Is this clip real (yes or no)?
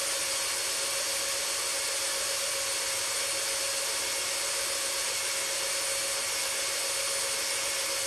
yes